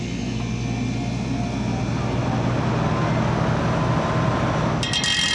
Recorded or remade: recorded